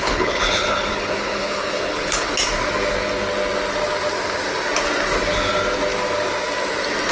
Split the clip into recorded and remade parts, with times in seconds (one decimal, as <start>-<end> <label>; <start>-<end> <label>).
0.0-2.3 remade; 2.3-7.1 recorded